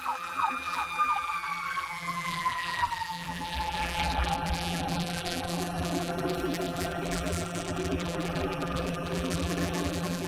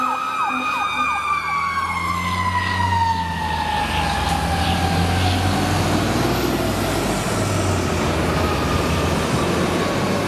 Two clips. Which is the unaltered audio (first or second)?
second